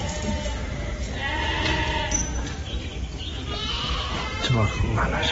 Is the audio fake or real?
real